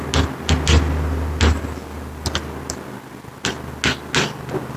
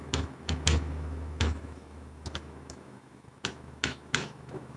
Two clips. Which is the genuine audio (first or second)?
first